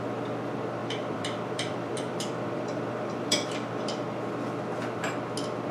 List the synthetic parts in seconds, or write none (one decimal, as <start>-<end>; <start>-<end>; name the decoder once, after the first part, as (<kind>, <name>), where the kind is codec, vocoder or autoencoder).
0.8-4.2 (vocoder, BigVGAN v2)